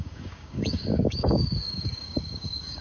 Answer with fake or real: fake